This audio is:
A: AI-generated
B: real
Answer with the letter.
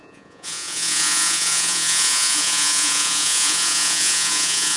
A